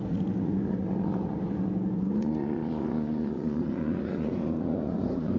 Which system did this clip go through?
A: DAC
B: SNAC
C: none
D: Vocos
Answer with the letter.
D